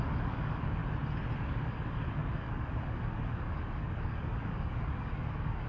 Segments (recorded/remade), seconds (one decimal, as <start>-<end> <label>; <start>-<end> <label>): 0.0-0.8 remade; 0.8-1.4 recorded; 1.4-5.7 remade